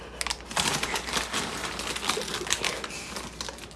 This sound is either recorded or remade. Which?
recorded